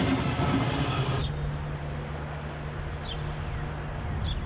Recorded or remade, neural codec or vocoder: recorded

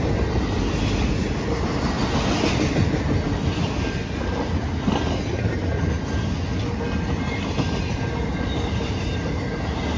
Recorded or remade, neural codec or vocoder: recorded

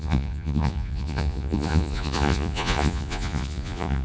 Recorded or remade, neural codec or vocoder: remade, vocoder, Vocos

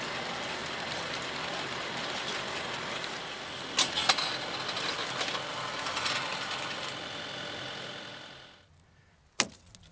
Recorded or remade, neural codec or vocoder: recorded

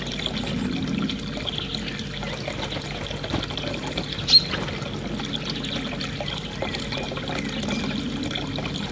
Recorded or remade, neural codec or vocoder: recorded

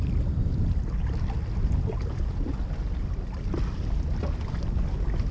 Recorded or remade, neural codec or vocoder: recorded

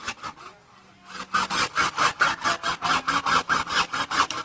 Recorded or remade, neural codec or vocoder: recorded